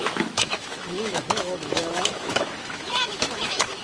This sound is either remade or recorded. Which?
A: remade